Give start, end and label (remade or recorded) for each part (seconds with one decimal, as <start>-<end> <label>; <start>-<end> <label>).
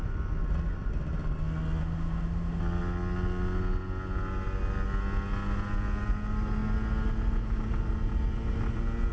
0.0-1.8 recorded; 1.8-2.6 remade; 2.6-9.1 recorded